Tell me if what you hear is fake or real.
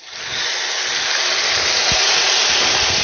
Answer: real